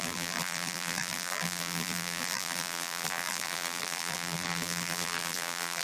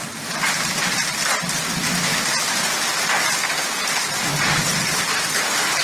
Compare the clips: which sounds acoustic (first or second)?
second